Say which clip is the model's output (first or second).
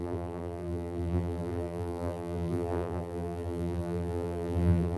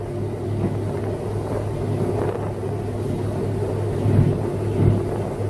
first